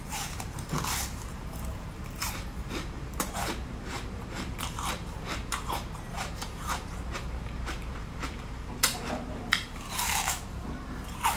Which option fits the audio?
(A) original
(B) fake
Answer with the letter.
B